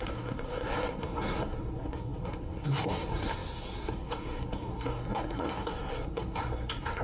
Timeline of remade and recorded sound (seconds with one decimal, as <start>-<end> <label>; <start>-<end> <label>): 0.0-7.0 remade